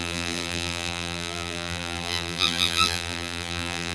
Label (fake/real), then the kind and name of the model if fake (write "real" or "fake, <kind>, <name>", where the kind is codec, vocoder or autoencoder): fake, vocoder, BigVGAN v2